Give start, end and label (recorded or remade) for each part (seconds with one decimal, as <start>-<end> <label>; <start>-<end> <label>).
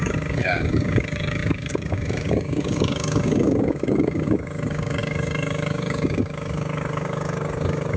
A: 0.0-8.0 remade